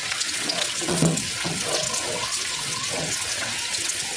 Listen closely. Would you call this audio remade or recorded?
remade